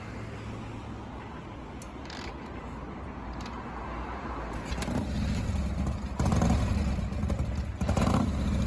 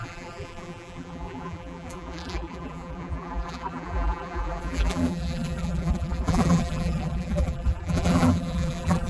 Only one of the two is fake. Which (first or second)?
second